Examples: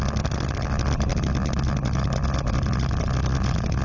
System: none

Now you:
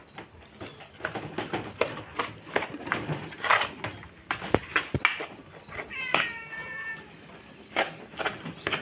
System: none